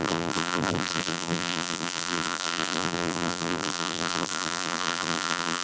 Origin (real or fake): fake